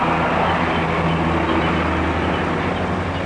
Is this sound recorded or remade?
recorded